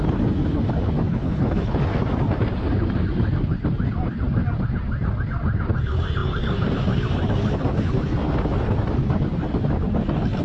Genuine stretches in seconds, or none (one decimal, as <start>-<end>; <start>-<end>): 0.0-1.1; 1.8-10.4